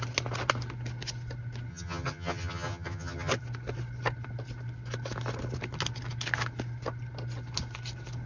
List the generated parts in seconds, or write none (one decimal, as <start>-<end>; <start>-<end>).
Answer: 1.7-3.3